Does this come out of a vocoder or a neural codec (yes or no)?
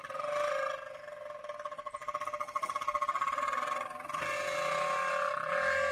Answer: no